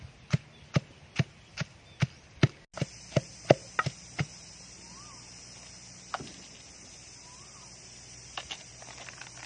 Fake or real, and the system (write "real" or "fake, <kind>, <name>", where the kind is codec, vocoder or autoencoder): real